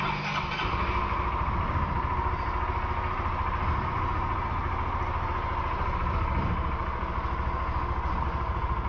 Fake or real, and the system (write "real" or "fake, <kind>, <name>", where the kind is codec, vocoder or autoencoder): real